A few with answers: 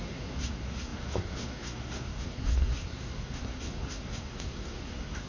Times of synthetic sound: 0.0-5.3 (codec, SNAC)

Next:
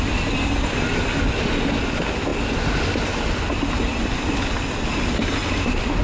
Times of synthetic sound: none

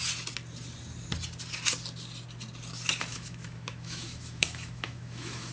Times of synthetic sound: 3.1-5.5 (autoencoder, DAC-VAE)

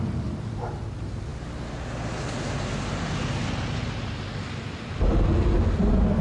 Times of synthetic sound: none

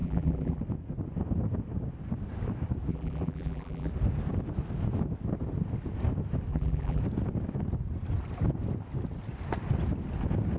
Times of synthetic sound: 0.0-0.6 (vocoder, BigVGAN v2); 2.9-3.9; 6.5-7.0

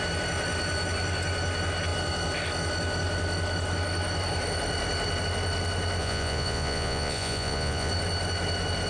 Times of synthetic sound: 6.0-7.9 (vocoder, Vocos)

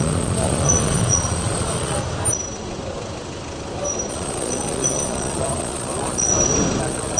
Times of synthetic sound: 0.0-2.0 (vocoder, Vocos); 4.1-6.3; 6.8-7.2

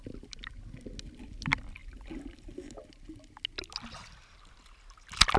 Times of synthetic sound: none